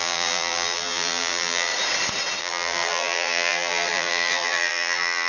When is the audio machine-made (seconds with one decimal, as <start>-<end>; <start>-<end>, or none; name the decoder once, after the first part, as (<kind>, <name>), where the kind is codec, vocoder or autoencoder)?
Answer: 0.0-1.7 (vocoder, BigVGAN v2); 2.4-5.3